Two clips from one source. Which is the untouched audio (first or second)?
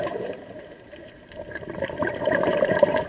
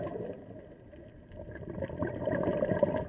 second